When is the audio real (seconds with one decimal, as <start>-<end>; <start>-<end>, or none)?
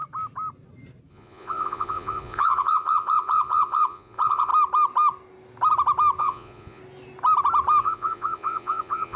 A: 0.0-1.1; 4.5-6.2; 6.8-7.8